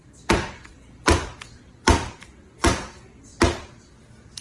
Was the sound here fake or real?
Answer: real